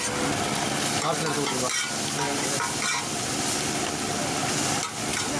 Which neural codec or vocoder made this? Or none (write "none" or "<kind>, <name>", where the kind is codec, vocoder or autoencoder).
none